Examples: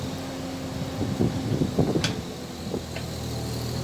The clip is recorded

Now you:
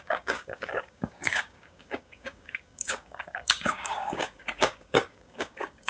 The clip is remade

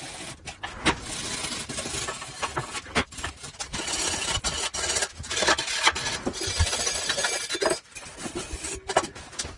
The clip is recorded